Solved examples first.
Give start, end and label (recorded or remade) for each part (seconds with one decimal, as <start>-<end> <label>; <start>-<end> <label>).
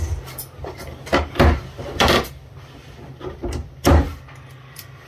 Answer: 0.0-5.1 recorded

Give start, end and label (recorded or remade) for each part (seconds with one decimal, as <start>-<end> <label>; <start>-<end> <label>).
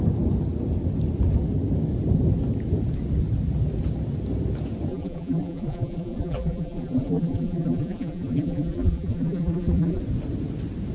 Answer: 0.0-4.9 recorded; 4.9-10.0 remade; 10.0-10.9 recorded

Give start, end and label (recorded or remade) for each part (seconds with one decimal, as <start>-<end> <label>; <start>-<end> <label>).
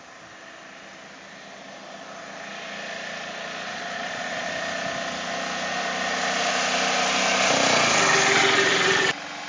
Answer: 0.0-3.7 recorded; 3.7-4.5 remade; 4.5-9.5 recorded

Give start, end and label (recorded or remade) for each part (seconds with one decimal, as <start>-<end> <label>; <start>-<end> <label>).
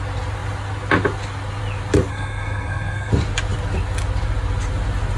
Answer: 0.0-2.1 recorded; 2.1-3.1 remade; 3.1-5.2 recorded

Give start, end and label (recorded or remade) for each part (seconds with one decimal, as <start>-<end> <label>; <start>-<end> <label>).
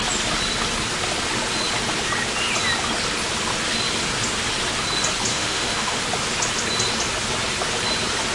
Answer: 0.0-5.3 recorded; 5.3-6.0 remade; 6.0-8.3 recorded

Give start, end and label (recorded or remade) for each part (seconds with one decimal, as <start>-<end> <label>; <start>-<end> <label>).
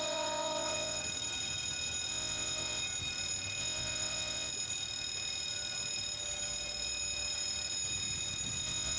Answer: 0.0-1.0 remade; 1.0-2.1 recorded; 2.1-2.8 remade; 2.8-3.6 recorded; 3.6-4.5 remade; 4.5-8.6 recorded; 8.6-9.0 remade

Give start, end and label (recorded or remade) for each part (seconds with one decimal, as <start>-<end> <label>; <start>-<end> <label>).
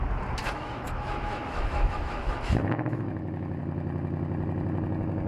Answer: 0.0-0.4 recorded; 0.4-3.6 remade; 3.6-5.3 recorded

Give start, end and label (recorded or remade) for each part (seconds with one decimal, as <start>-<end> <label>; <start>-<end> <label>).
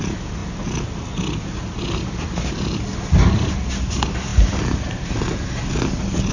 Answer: 0.0-6.3 recorded